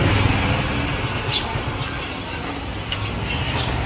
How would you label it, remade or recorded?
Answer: recorded